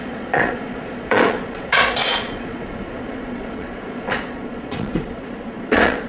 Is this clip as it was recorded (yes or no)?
no